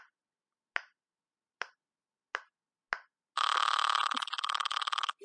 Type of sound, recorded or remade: recorded